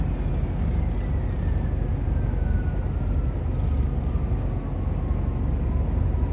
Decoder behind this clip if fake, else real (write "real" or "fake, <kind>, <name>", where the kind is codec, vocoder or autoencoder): real